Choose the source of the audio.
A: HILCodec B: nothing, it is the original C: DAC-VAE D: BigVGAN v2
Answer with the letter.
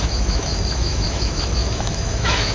C